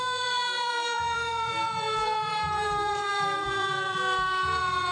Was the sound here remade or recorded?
remade